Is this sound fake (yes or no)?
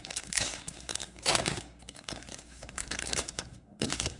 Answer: yes